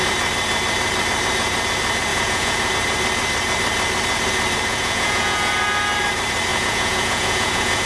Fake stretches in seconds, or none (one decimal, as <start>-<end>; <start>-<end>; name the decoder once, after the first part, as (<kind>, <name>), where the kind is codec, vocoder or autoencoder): 2.1-2.7 (vocoder, Vocos); 4.7-5.5; 6.5-7.9